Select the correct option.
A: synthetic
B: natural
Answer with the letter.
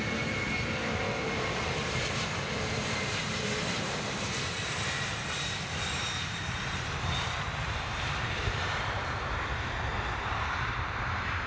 A